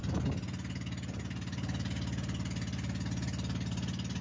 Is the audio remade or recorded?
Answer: recorded